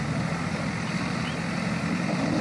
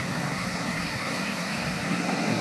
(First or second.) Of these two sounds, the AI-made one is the second